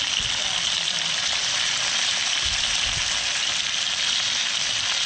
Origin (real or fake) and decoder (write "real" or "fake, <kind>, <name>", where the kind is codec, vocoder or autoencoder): real